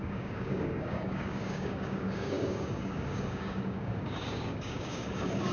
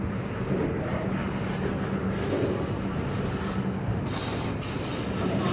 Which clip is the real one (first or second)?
second